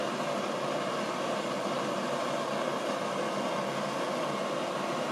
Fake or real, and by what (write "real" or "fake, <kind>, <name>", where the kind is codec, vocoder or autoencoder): real